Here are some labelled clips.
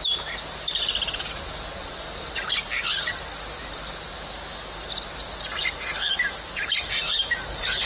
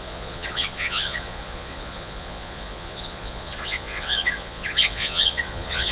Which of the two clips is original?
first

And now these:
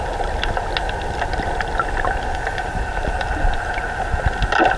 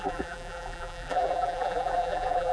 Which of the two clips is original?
first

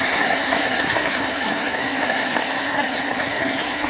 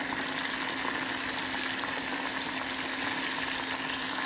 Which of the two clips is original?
second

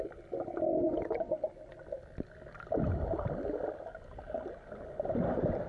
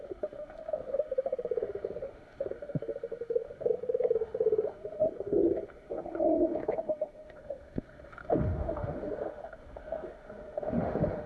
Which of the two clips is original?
first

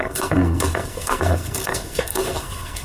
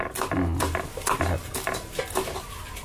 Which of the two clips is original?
second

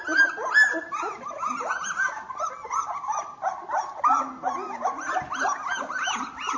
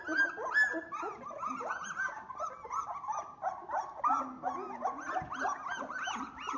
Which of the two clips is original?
second